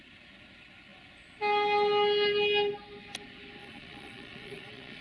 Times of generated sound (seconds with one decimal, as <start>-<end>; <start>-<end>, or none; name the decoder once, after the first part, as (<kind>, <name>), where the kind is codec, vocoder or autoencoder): 3.6-5.0 (vocoder, Vocos)